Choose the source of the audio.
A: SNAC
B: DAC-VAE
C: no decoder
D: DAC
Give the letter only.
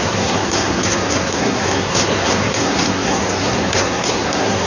A